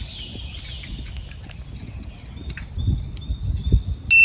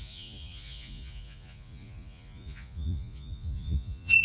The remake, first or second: second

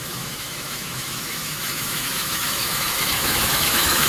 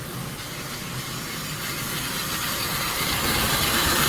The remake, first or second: first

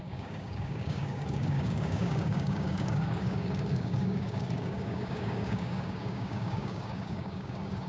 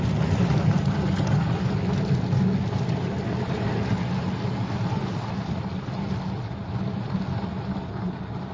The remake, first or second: first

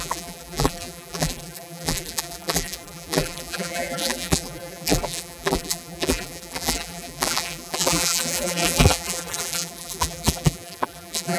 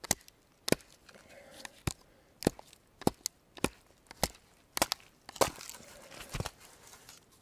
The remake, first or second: first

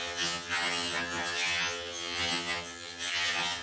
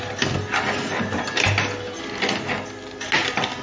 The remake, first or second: first